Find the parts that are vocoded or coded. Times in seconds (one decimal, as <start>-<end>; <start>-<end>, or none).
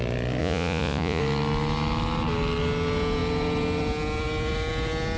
0.4-1.2